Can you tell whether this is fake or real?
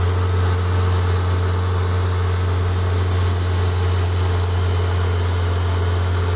real